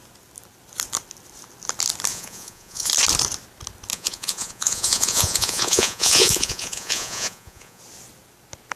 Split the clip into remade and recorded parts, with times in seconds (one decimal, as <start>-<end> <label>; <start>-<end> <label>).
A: 0.0-2.1 recorded; 2.1-2.9 remade; 2.9-3.9 recorded; 3.9-7.8 remade; 7.8-8.8 recorded